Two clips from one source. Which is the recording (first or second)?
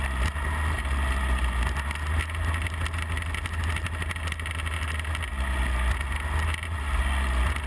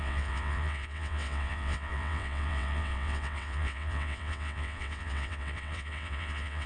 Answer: first